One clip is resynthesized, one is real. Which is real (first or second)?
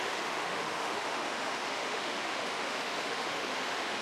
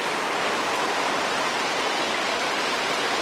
second